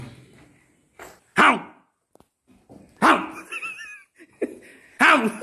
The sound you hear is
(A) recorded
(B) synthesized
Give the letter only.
A